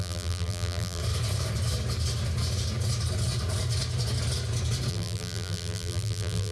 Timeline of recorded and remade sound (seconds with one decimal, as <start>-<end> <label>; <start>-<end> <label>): 0.0-1.0 remade; 1.0-4.9 recorded; 4.9-6.5 remade